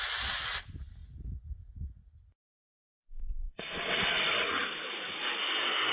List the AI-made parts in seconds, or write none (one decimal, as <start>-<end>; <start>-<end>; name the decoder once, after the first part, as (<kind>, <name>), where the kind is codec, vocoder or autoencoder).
none